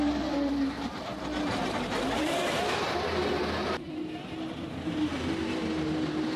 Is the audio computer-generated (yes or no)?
no